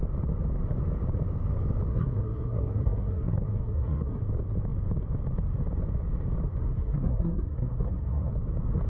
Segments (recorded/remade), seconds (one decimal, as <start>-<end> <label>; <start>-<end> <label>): 0.0-1.9 recorded; 1.9-4.2 remade; 4.2-6.6 recorded; 6.6-8.3 remade; 8.3-8.9 recorded